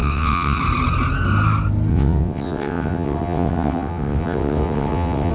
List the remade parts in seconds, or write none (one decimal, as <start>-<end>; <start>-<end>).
0.0-0.6; 1.9-5.3